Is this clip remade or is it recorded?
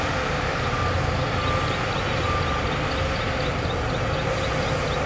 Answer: recorded